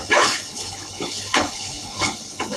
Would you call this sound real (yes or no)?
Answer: no